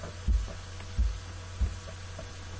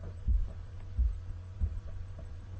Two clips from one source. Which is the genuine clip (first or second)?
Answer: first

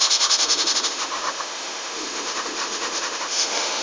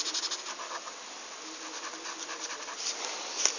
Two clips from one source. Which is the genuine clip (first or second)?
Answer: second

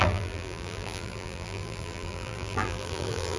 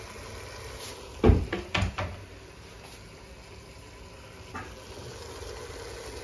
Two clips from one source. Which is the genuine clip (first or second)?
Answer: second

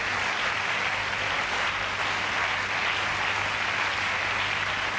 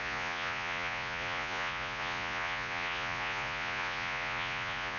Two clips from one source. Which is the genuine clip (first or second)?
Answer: first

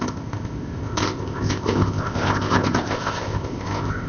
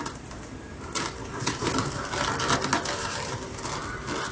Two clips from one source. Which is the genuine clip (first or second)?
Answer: second